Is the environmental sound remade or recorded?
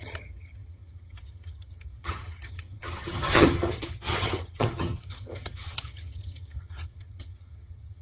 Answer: remade